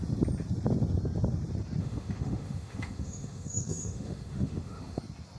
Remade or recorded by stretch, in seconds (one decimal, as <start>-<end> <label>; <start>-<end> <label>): 0.0-1.8 recorded; 1.8-5.0 remade; 5.0-5.4 recorded